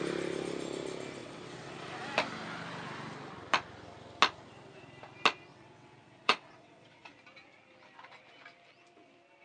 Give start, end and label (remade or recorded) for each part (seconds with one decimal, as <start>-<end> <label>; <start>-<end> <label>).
0.0-1.2 recorded; 1.2-1.7 remade; 1.7-5.5 recorded; 5.5-7.1 remade; 7.1-9.4 recorded